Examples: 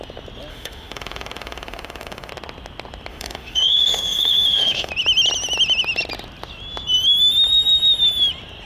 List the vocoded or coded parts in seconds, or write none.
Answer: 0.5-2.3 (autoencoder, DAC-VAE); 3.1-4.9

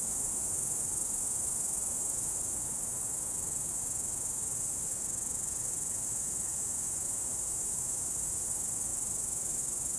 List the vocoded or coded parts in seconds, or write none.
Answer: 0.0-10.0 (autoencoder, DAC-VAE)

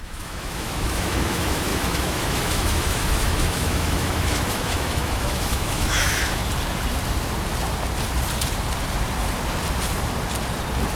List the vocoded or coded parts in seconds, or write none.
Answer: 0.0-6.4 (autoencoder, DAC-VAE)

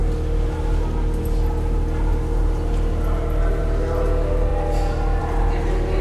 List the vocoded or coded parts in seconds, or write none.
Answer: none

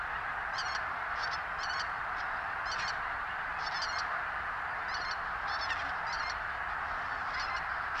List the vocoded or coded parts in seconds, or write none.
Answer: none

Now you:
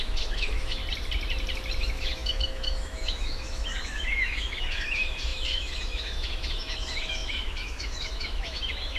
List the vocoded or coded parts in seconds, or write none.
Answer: 0.0-0.8 (autoencoder, DAC-VAE); 1.8-9.0

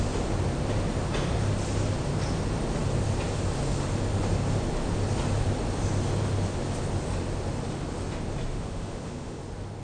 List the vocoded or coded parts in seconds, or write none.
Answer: 8.5-9.4 (autoencoder, DAC-VAE)

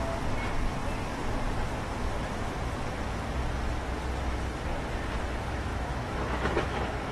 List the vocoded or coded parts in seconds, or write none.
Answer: 5.7-7.1 (autoencoder, DAC-VAE)